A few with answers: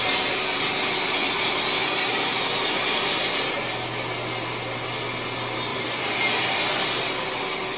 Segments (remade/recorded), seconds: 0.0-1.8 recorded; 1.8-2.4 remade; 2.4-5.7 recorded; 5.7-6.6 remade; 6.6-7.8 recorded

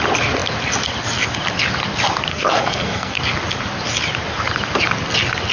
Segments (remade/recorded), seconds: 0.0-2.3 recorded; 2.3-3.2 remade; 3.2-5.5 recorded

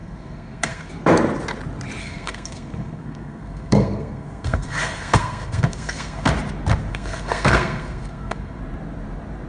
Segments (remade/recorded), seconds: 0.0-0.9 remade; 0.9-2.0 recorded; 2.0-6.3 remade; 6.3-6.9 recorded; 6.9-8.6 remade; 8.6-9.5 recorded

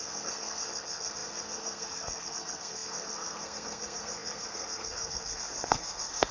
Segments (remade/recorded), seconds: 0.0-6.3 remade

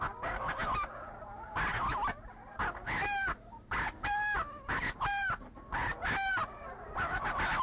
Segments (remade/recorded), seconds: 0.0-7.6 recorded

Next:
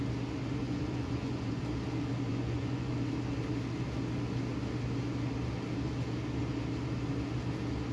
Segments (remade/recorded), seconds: 0.0-0.6 recorded; 0.6-1.6 remade; 1.6-2.3 recorded; 2.3-2.9 remade; 2.9-7.9 recorded